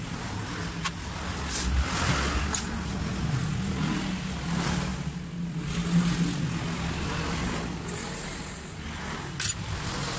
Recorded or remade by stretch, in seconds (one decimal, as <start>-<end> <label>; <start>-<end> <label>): 0.0-10.2 recorded